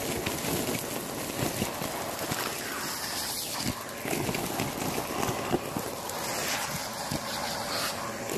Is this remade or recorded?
recorded